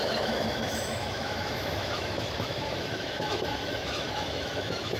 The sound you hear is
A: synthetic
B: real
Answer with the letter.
A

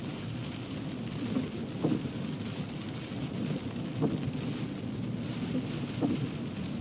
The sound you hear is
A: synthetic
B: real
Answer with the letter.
B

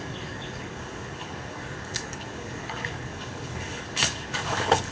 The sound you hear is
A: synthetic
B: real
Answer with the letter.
A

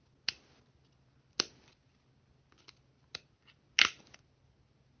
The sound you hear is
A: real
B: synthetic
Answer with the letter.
A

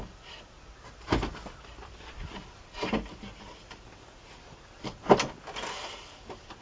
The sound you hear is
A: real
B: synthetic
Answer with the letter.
A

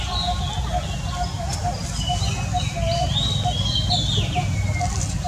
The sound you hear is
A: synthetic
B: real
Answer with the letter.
B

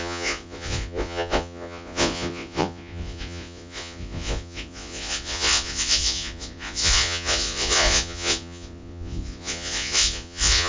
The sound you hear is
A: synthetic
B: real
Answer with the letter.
A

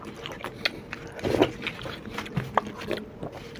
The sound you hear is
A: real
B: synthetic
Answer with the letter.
A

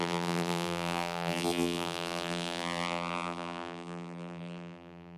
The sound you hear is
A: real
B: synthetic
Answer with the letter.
B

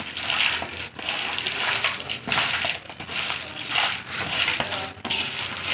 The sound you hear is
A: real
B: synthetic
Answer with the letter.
A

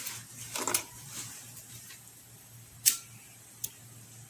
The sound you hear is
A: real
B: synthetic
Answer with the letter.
A